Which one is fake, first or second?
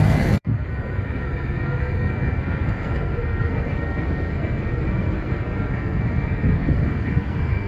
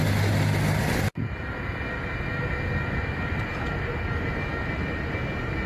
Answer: first